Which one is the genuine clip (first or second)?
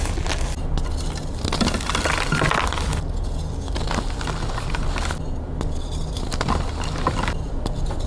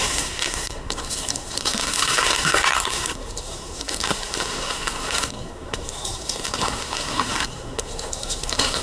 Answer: first